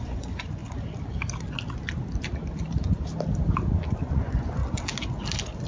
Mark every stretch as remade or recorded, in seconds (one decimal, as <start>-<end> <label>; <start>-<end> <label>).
0.0-0.6 remade; 0.6-4.0 recorded; 4.0-4.6 remade; 4.6-5.7 recorded